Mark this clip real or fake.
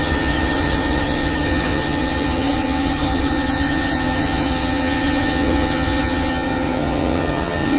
fake